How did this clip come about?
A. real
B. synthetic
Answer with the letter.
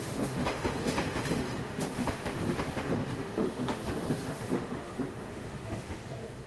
B